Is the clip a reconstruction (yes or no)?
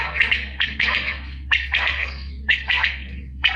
yes